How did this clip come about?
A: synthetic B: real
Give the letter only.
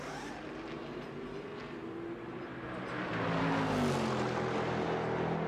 B